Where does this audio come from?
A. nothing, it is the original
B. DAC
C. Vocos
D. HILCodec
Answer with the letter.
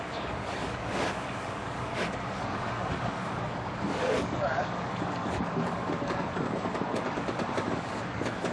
B